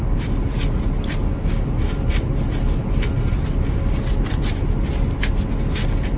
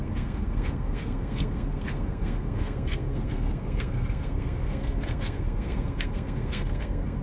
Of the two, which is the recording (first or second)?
first